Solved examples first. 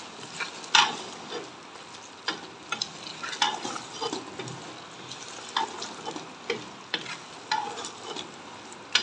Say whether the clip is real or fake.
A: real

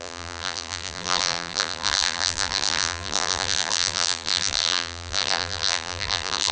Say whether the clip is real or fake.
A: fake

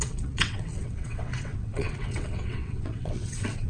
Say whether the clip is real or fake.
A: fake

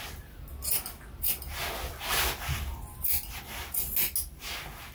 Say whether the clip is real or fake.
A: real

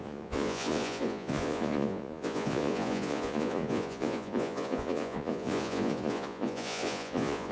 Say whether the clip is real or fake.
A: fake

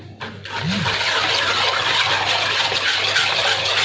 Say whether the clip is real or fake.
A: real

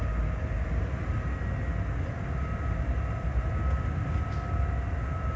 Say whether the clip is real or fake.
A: real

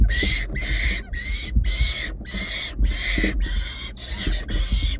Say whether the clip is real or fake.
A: real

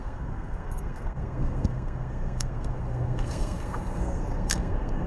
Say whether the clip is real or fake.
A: fake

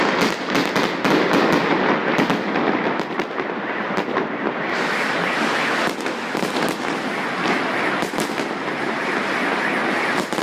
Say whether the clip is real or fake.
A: real